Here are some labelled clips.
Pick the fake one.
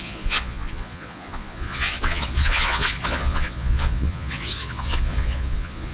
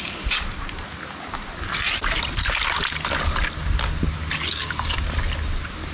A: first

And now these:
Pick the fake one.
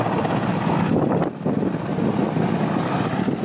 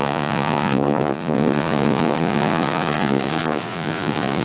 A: second